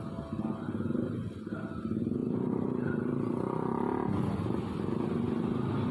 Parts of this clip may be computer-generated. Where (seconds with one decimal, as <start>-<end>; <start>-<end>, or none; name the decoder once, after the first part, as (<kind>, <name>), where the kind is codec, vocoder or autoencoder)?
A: 2.2-3.3 (vocoder, BigVGAN v2)